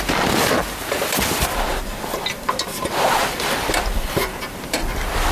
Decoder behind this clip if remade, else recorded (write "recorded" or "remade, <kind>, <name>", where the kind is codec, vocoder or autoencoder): recorded